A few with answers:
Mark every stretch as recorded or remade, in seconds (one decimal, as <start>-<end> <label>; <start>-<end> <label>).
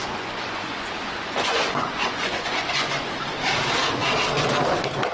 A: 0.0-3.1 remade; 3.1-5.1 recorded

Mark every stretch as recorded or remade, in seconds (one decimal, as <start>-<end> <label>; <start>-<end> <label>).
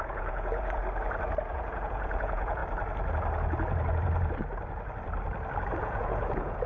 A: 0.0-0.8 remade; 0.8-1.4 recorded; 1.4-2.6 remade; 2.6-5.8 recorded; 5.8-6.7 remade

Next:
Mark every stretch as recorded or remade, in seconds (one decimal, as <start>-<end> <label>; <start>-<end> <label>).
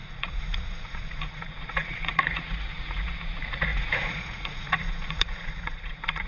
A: 0.0-6.3 remade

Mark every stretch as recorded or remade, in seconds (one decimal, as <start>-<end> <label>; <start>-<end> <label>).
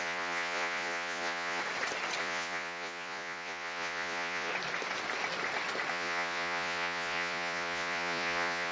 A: 0.0-1.6 remade; 1.6-2.2 recorded; 2.2-4.5 remade; 4.5-5.9 recorded; 5.9-8.7 remade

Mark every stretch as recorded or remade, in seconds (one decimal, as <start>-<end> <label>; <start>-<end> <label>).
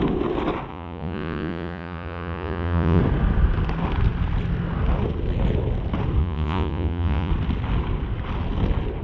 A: 0.0-0.7 recorded; 0.7-3.0 remade; 3.0-6.2 recorded; 6.2-7.3 remade; 7.3-9.0 recorded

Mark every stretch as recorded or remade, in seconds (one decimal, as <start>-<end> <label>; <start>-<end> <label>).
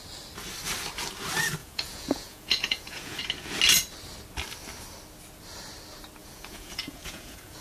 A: 0.0-1.6 recorded; 1.6-3.2 remade; 3.2-6.2 recorded; 6.2-7.6 remade